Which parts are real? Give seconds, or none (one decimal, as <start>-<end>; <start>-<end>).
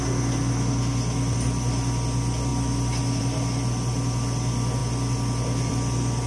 0.0-6.3